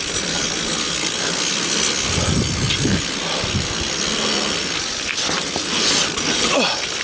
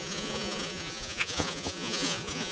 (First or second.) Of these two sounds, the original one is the first